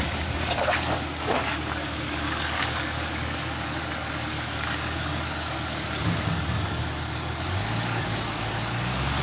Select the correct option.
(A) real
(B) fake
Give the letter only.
B